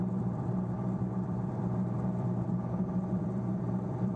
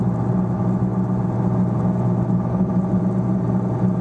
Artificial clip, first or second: first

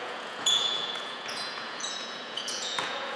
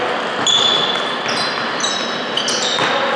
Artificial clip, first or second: first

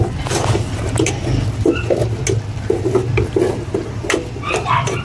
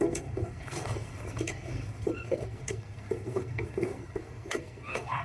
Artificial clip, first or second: second